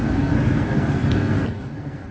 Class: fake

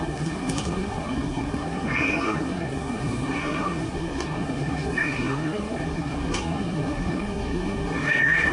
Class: fake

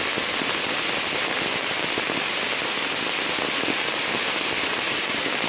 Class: real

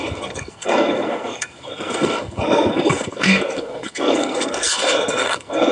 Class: fake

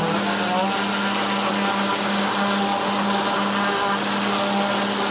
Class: real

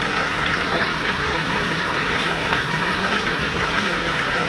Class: fake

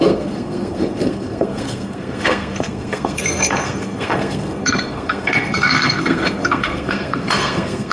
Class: fake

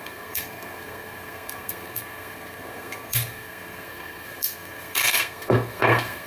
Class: fake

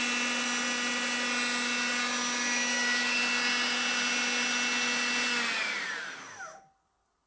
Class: real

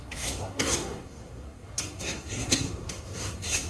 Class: fake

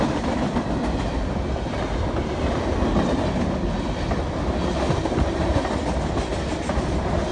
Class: real